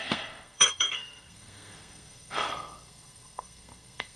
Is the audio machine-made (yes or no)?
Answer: yes